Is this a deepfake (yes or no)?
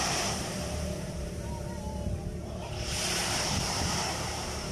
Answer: yes